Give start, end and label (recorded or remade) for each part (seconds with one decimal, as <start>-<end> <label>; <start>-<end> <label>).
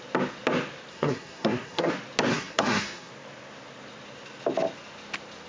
0.0-0.9 recorded; 0.9-1.9 remade; 1.9-2.3 recorded; 2.3-3.1 remade; 3.1-5.5 recorded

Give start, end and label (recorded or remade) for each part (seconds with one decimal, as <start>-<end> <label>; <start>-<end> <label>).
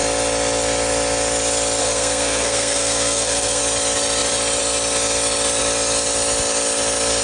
0.0-1.8 recorded; 1.8-3.6 remade; 3.6-7.2 recorded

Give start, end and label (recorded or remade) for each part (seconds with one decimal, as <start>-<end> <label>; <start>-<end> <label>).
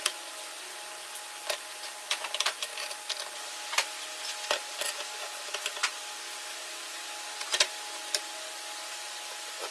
0.0-9.7 recorded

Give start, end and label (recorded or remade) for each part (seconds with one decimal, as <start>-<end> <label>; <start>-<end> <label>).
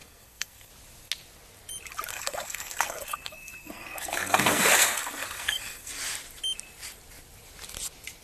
0.0-0.7 remade; 0.7-2.1 recorded; 2.1-5.9 remade; 5.9-8.2 recorded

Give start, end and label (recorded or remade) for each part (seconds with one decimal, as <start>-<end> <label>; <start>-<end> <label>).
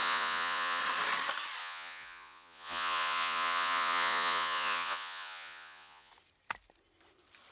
0.0-0.8 remade; 0.8-1.6 recorded; 1.6-6.1 remade; 6.1-7.5 recorded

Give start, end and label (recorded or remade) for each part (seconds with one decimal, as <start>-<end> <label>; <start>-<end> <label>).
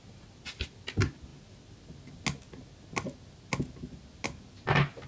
0.0-5.1 recorded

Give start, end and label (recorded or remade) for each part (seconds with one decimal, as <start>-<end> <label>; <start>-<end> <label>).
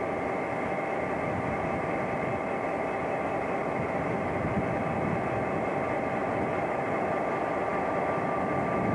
0.0-6.2 recorded; 6.2-7.1 remade; 7.1-8.9 recorded